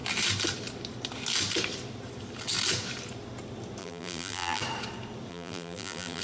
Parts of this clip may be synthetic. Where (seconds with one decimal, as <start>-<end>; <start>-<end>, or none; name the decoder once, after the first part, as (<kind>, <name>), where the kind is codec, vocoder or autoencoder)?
3.8-4.6 (vocoder, BigVGAN v2); 5.3-6.2